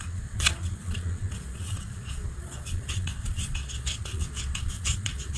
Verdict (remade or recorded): remade